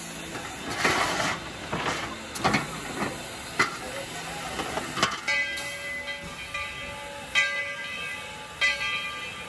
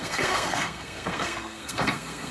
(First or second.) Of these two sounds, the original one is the first